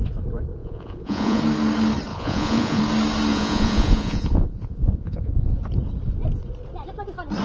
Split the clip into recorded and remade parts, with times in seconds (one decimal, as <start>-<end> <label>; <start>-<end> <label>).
0.0-0.6 recorded; 0.6-1.4 remade; 1.4-2.1 recorded; 2.1-2.8 remade; 2.8-3.3 recorded; 3.3-5.6 remade; 5.6-7.4 recorded